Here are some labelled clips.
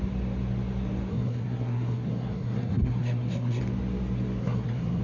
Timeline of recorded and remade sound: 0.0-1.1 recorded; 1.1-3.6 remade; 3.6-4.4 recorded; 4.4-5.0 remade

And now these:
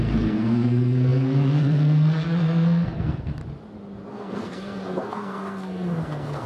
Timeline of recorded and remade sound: 0.0-3.4 remade; 3.4-4.1 recorded; 4.1-6.5 remade